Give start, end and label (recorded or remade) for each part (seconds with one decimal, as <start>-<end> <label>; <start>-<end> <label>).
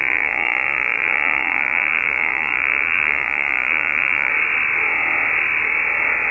0.0-4.3 remade; 4.3-6.3 recorded